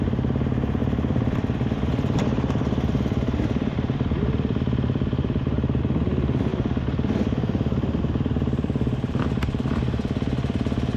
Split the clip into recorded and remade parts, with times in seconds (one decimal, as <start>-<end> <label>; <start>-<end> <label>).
0.0-0.8 recorded; 0.8-5.8 remade; 5.8-6.5 recorded; 6.5-8.0 remade; 8.0-11.0 recorded